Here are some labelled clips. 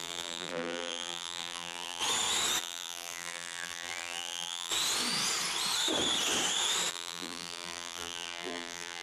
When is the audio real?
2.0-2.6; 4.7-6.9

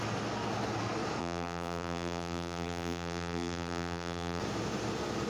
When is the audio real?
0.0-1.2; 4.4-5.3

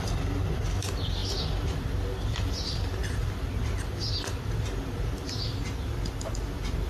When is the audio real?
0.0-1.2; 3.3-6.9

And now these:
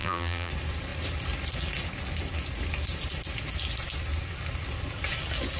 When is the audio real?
0.5-5.6